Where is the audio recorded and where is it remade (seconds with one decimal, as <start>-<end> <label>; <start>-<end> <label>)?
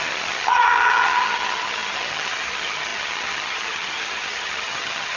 0.0-5.2 remade